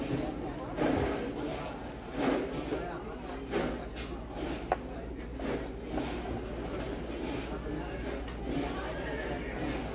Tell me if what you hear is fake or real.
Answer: real